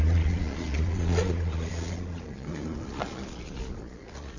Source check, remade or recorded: remade